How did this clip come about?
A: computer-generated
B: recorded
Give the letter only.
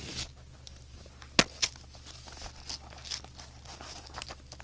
B